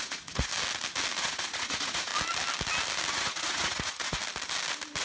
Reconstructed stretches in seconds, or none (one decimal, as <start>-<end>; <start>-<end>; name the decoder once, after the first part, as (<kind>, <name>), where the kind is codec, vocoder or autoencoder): 0.0-0.5 (vocoder, Vocos); 1.2-2.1; 3.1-4.2